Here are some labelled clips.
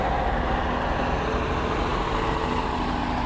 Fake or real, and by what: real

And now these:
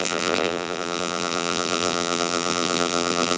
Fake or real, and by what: fake, vocoder, BigVGAN v2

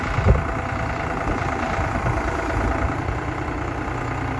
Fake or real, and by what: fake, vocoder, BigVGAN v2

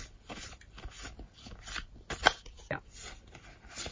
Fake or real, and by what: real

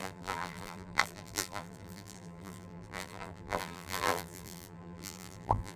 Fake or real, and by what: fake, vocoder, BigVGAN v2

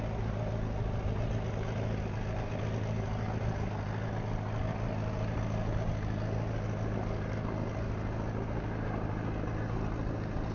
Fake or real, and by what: real